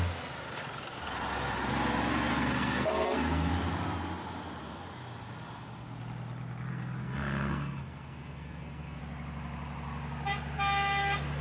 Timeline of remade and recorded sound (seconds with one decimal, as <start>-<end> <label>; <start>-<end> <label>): 0.0-2.3 recorded; 2.3-3.5 remade; 3.5-6.7 recorded; 6.7-9.0 remade; 9.0-11.4 recorded